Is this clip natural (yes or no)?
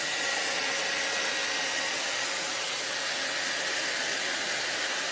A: yes